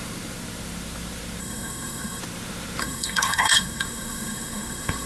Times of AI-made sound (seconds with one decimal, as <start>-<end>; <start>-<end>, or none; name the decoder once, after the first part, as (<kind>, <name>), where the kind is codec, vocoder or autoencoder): 1.4-2.2 (codec, SNAC); 2.8-5.1